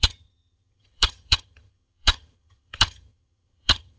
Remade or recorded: remade